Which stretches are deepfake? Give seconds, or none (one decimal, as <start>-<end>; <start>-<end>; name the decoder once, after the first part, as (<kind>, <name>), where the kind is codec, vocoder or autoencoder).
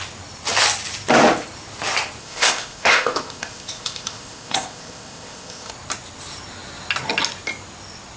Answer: 2.2-5.7 (codec, ZipCodec)